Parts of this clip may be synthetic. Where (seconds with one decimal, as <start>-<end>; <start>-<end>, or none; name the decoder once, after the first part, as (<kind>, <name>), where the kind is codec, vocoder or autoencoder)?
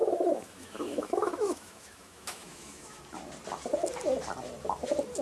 0.0-3.0 (autoencoder, DAC-VAE)